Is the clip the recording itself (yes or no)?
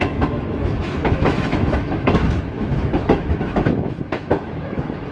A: no